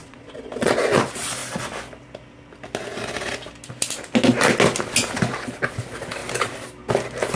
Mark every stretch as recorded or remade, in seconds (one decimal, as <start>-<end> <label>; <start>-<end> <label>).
0.0-0.7 remade; 0.7-7.4 recorded